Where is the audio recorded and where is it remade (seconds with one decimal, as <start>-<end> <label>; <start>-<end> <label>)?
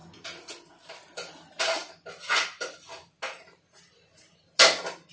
0.0-5.1 recorded